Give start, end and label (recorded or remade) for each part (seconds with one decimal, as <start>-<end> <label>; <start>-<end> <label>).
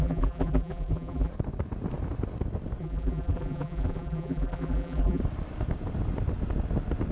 0.0-1.3 remade; 1.3-2.8 recorded; 2.8-5.2 remade; 5.2-7.1 recorded